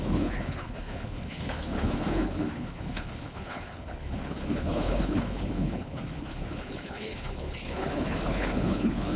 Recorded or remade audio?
remade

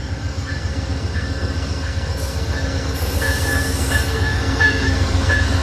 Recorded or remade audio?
remade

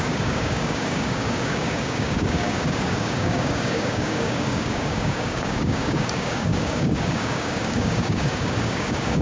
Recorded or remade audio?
remade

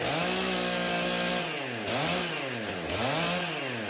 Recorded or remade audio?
recorded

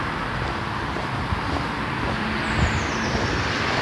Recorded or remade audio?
recorded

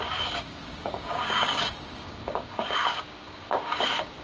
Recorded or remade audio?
remade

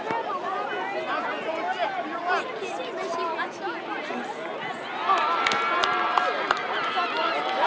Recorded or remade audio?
recorded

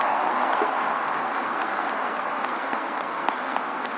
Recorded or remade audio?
remade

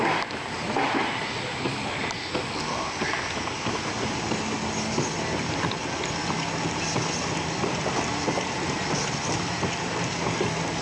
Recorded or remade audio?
recorded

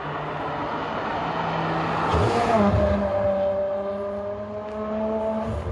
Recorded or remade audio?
recorded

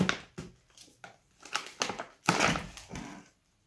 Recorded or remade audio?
recorded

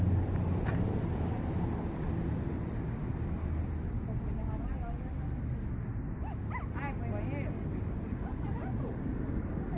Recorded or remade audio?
recorded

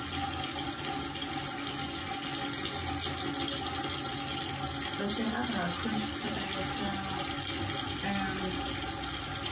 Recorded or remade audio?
recorded